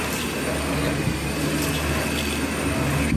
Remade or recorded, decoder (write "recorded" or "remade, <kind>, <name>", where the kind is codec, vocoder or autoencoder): recorded